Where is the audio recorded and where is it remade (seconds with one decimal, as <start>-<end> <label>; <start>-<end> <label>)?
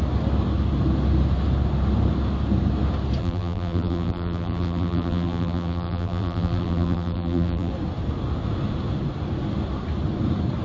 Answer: 0.0-3.2 recorded; 3.2-7.7 remade; 7.7-10.6 recorded